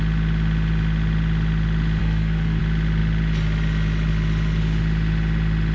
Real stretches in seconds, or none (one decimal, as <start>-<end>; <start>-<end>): 0.0-2.0; 2.6-5.7